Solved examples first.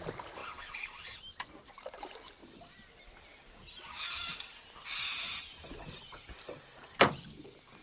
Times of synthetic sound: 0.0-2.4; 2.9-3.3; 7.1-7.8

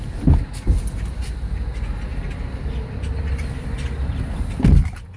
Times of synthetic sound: none

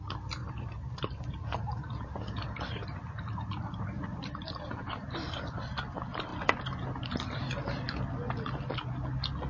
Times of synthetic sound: 0.4-5.4

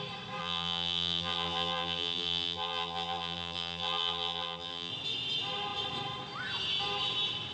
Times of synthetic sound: 0.4-4.9

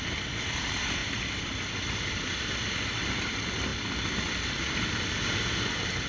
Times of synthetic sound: 1.0-2.5

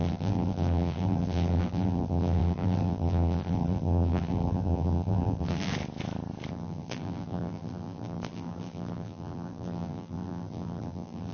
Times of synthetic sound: 0.0-5.7; 6.5-11.3

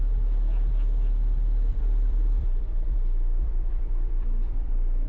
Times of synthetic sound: 1.7-5.1

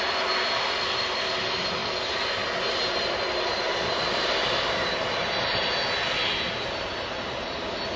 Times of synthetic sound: 1.8-5.7